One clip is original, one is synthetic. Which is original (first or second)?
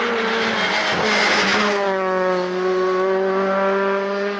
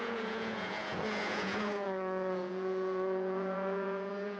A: first